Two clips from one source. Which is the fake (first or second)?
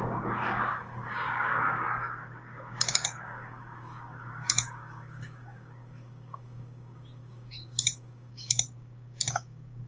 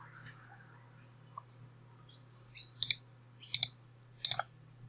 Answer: first